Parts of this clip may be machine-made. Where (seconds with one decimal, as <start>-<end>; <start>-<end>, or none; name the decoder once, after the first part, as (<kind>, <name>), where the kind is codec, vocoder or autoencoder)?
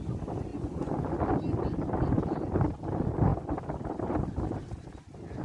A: 0.5-1.1 (vocoder, Vocos)